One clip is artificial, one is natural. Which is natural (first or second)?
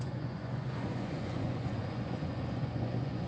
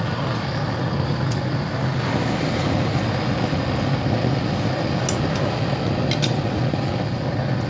second